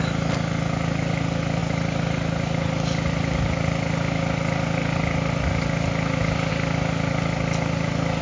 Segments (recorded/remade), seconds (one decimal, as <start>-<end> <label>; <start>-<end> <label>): 0.0-8.2 recorded

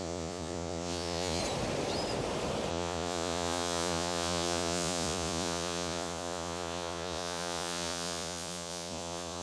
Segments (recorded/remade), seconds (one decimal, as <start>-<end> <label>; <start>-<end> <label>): 0.0-1.4 remade; 1.4-2.7 recorded; 2.7-9.4 remade

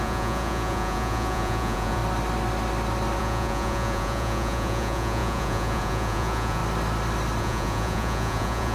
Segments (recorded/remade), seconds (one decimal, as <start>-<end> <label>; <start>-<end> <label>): 0.0-2.0 remade; 2.0-3.2 recorded; 3.2-6.6 remade; 6.6-7.4 recorded; 7.4-8.7 remade